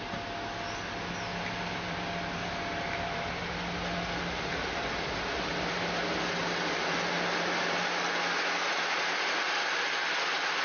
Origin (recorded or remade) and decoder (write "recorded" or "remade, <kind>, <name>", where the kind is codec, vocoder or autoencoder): recorded